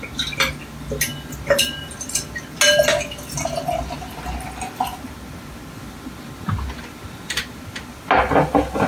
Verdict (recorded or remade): recorded